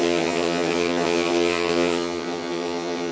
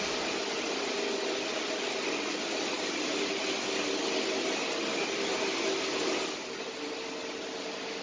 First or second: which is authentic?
second